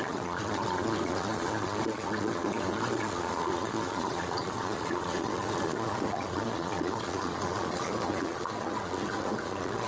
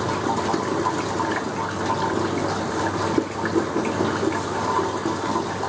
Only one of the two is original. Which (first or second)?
second